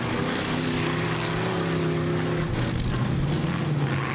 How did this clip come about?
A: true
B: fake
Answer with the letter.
A